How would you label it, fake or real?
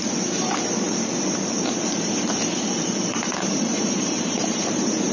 fake